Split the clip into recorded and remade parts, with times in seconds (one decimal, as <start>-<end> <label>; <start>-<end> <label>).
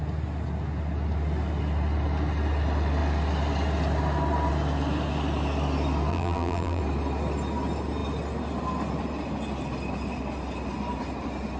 0.0-6.1 recorded; 6.1-6.8 remade; 6.8-11.6 recorded